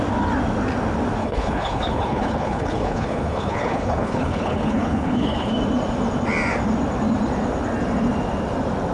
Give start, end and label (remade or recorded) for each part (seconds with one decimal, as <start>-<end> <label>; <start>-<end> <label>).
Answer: 0.0-1.2 recorded; 1.2-5.5 remade; 5.5-8.9 recorded